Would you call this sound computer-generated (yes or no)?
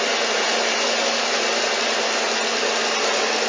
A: no